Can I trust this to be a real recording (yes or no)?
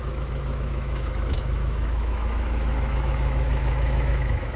no